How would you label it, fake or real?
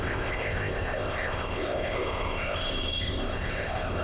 fake